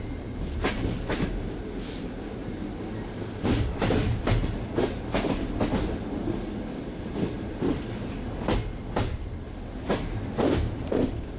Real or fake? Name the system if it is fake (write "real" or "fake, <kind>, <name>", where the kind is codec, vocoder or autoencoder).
real